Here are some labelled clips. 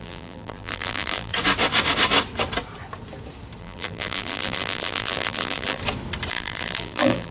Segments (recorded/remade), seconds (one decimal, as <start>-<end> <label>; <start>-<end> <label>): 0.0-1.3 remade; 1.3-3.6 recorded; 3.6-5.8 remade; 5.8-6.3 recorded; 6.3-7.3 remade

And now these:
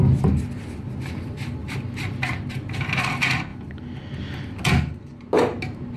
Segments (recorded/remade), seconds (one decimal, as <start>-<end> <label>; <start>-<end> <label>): 0.0-1.6 recorded; 1.6-2.4 remade; 2.4-6.0 recorded

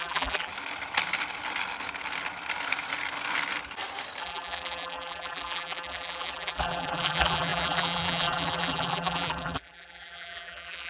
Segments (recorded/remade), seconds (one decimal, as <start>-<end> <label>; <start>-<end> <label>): 0.0-0.5 remade; 0.5-4.2 recorded; 4.2-10.9 remade